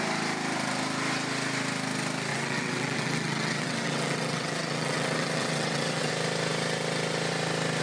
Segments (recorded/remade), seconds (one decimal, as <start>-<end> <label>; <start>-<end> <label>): 0.0-2.3 recorded; 2.3-6.1 remade; 6.1-7.8 recorded